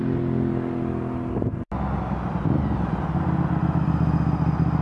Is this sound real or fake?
real